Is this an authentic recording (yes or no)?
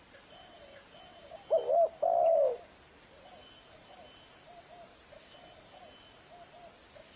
yes